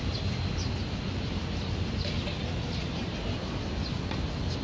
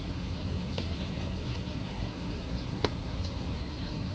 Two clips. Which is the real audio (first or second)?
first